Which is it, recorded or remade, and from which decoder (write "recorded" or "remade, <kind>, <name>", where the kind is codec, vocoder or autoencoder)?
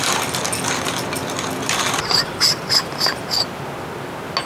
recorded